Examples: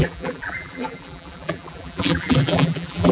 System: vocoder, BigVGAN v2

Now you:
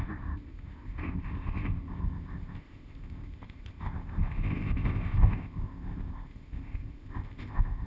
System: codec, ZipCodec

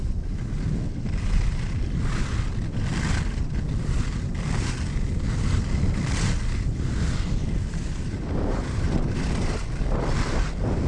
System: none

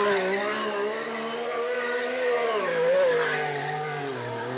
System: none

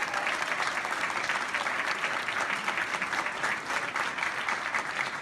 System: none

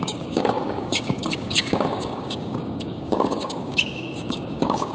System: codec, DAC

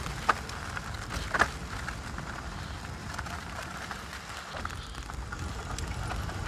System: none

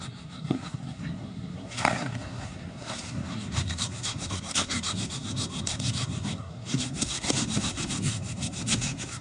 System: codec, SNAC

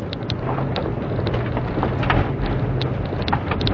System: none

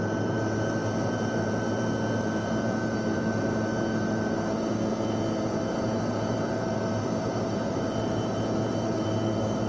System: vocoder, BigVGAN v2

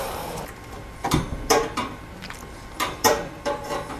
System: vocoder, BigVGAN v2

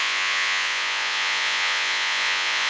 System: vocoder, Vocos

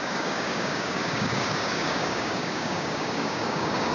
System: codec, DAC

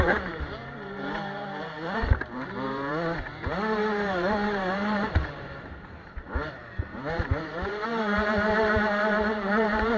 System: vocoder, BigVGAN v2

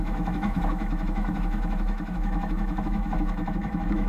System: autoencoder, DAC-VAE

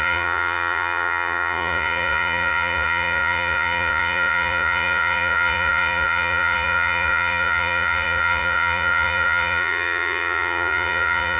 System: vocoder, Vocos